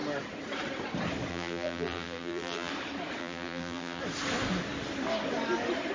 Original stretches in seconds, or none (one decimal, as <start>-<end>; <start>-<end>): 0.0-1.3; 2.7-3.2; 4.0-5.9